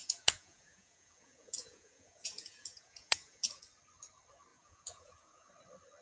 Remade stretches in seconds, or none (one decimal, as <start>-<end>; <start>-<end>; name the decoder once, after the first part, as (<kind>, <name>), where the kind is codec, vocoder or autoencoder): 0.0-3.6 (vocoder, Vocos); 4.5-5.5